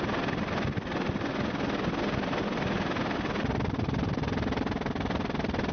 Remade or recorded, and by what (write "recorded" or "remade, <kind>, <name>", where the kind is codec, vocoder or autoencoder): recorded